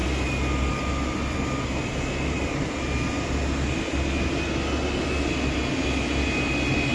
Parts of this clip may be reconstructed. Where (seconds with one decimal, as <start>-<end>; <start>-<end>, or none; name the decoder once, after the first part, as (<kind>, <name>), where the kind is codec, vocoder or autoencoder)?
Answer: none